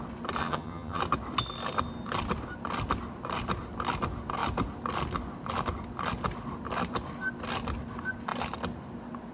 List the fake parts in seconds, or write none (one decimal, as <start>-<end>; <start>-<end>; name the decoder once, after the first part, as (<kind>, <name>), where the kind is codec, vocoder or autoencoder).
0.4-1.0 (vocoder, HiFi-GAN)